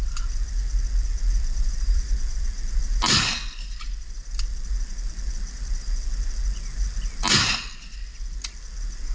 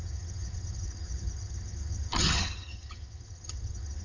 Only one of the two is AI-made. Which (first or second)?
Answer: second